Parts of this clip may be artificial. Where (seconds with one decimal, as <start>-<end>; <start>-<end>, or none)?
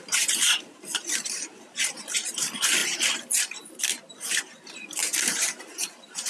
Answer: 0.0-2.8; 4.1-6.3